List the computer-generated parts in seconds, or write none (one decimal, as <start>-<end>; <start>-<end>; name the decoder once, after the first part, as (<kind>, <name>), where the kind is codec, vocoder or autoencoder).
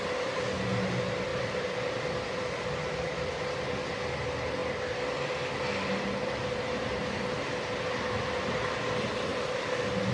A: 1.3-4.0 (vocoder, BigVGAN v2); 9.3-10.1